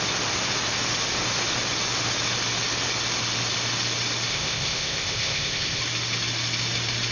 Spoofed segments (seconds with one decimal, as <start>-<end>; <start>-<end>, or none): 4.3-5.8